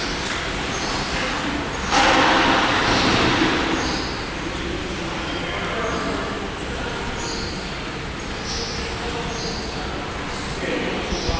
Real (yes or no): yes